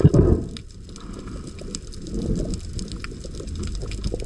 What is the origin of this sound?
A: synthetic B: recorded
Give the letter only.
B